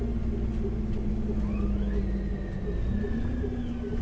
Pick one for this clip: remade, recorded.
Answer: recorded